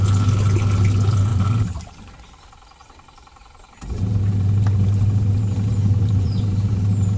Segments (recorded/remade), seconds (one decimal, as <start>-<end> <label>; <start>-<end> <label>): 0.0-1.3 recorded; 1.3-2.1 remade; 2.1-2.8 recorded; 2.8-7.2 remade